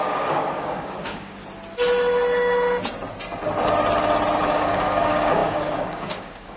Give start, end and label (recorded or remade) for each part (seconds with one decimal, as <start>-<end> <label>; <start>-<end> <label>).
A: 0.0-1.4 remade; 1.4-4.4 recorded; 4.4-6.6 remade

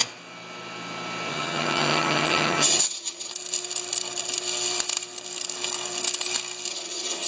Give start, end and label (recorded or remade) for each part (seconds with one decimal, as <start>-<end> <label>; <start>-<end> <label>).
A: 0.0-1.3 recorded; 1.3-3.3 remade; 3.3-6.7 recorded; 6.7-7.3 remade

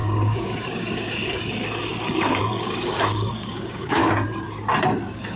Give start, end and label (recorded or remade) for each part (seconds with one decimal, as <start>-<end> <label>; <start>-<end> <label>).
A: 0.0-4.0 remade; 4.0-5.0 recorded; 5.0-5.4 remade